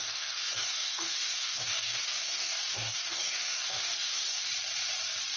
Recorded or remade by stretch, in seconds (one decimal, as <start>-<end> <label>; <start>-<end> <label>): 0.0-4.5 remade; 4.5-5.4 recorded